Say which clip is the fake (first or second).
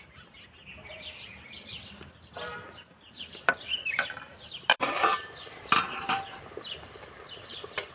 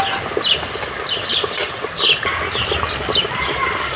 first